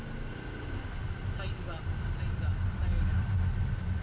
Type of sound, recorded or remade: recorded